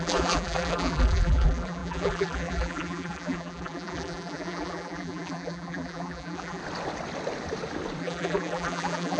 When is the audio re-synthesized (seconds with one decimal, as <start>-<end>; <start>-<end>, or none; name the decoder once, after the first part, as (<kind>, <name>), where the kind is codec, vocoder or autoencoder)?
0.0-6.6 (vocoder, BigVGAN v2); 8.0-9.2